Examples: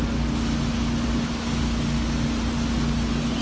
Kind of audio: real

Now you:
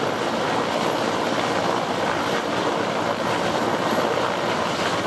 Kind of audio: real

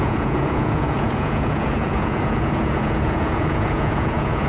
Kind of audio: fake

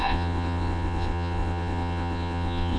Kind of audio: fake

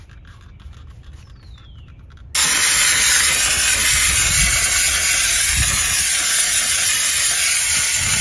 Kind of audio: real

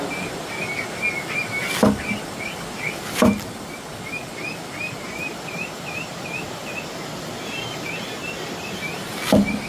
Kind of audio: real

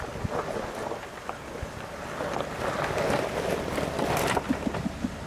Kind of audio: real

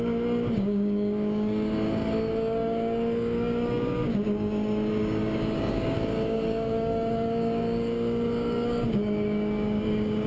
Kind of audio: fake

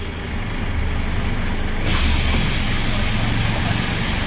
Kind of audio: real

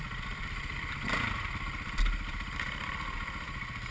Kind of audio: real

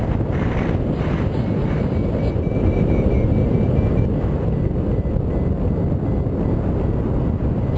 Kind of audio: real